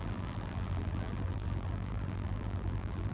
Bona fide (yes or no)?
no